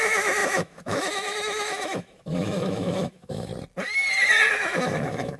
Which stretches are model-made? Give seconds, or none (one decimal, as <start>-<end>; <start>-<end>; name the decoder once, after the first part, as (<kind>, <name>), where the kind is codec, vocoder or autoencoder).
0.0-3.5 (autoencoder, DAC-VAE); 4.5-5.4